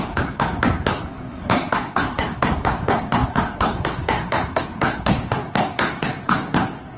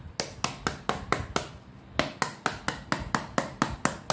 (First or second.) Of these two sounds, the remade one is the first